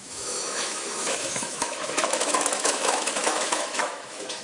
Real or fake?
fake